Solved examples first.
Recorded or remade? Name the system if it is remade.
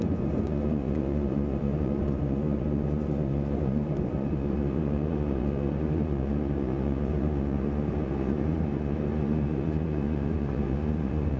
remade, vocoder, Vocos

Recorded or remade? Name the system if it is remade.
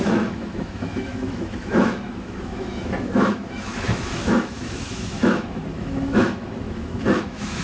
remade, autoencoder, DAC-VAE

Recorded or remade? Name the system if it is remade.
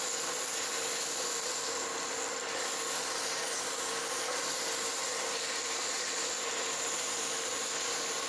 recorded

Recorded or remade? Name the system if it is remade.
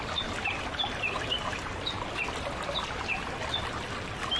recorded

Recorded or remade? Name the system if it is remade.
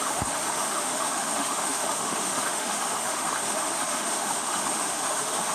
remade, autoencoder, DAC-VAE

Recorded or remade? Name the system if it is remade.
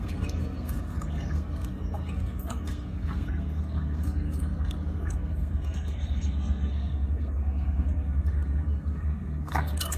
remade, codec, SNAC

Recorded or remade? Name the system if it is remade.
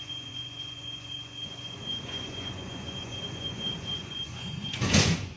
remade, vocoder, Vocos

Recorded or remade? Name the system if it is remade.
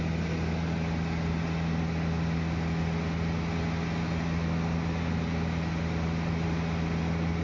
recorded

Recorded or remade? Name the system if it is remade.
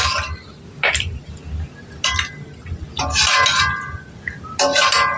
recorded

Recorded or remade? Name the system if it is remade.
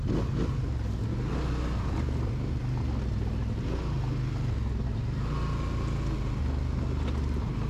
recorded